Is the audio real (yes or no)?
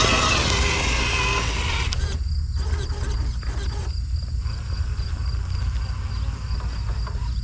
yes